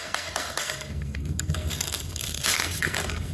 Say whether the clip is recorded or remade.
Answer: remade